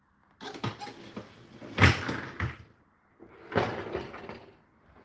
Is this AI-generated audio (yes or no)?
no